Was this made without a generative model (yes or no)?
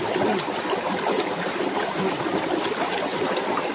yes